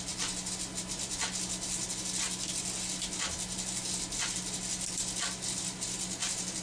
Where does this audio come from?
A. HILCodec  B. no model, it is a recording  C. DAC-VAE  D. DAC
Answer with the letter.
B